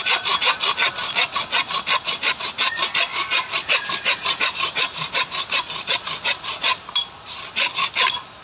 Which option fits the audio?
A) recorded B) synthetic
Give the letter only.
A